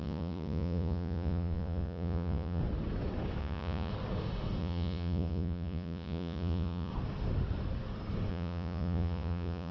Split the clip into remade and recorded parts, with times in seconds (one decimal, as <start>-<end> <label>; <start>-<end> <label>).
0.0-2.6 remade; 2.6-3.4 recorded; 3.4-3.9 remade; 3.9-4.6 recorded; 4.6-6.9 remade; 6.9-8.3 recorded; 8.3-9.7 remade